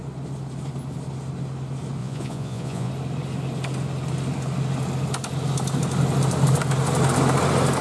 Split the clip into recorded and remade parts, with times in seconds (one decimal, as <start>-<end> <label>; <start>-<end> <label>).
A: 0.0-2.0 recorded; 2.0-2.9 remade; 2.9-7.8 recorded